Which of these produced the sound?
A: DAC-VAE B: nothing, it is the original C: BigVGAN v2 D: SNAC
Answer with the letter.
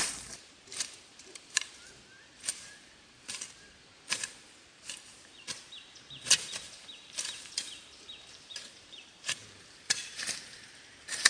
C